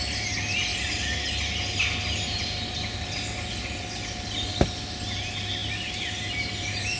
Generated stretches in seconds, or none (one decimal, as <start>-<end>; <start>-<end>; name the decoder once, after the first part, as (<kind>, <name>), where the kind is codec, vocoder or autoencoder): 5.6-7.0 (vocoder, BigVGAN v2)